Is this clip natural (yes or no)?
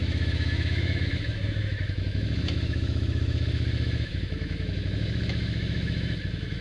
no